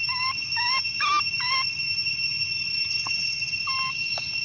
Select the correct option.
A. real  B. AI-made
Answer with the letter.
A